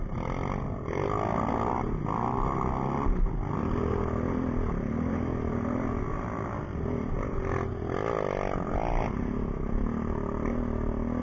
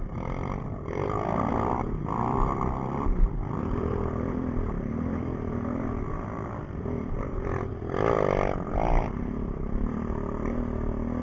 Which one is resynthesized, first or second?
second